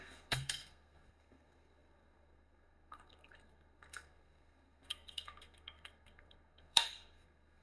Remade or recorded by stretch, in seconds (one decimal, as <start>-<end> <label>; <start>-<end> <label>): 0.0-7.6 remade